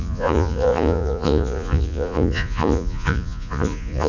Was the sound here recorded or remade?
remade